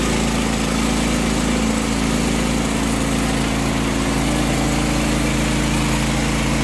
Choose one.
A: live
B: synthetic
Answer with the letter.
A